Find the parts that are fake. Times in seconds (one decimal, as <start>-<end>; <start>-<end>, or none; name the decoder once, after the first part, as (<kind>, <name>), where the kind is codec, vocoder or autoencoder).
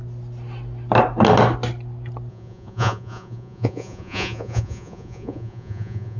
2.3-6.2 (vocoder, Vocos)